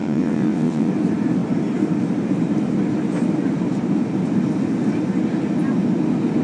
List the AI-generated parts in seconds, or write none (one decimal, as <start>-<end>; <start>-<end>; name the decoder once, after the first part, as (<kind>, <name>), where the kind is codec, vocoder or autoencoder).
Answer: 0.0-0.9 (vocoder, WaveNeXt)